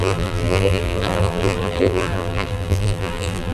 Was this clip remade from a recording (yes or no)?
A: yes